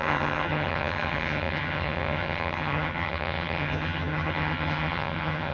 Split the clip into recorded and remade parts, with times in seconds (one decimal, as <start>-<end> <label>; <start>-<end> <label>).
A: 0.0-5.5 remade